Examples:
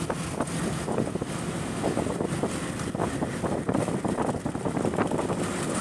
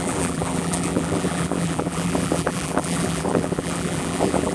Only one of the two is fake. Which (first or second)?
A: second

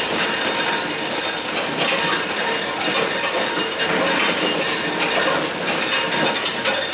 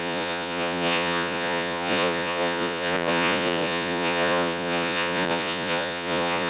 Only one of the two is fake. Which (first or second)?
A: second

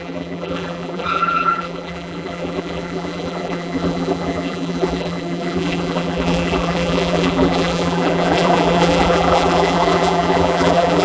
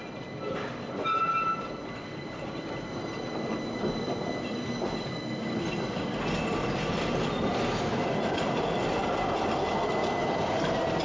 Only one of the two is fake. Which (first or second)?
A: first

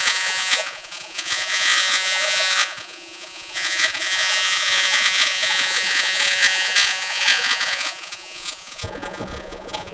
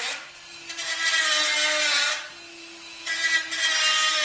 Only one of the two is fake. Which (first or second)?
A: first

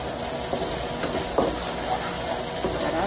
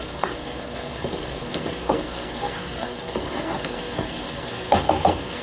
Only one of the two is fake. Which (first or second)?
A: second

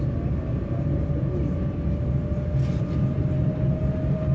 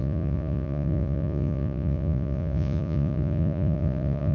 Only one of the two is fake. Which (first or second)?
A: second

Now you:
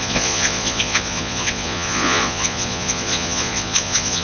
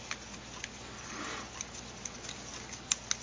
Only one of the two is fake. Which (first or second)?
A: first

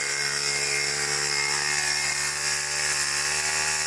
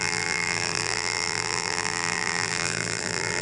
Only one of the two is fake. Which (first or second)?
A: second